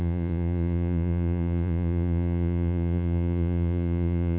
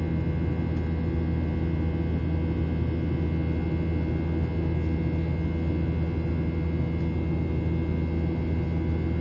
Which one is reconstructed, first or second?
first